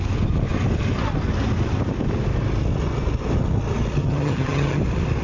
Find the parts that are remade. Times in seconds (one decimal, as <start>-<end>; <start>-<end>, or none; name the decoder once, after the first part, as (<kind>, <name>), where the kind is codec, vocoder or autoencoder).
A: 4.0-4.8 (vocoder, HiFi-GAN)